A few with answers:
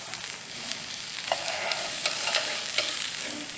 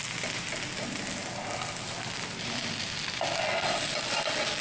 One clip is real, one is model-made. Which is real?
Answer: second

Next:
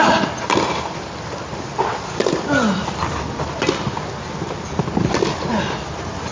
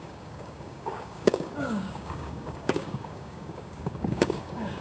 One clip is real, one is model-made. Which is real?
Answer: first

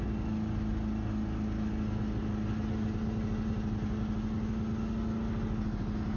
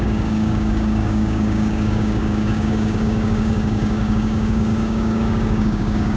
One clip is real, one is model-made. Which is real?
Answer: first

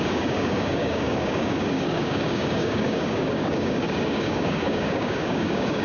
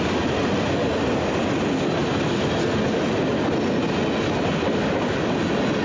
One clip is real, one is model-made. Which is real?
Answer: second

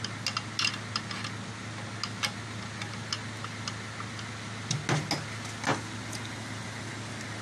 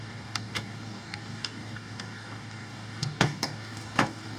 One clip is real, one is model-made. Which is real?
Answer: first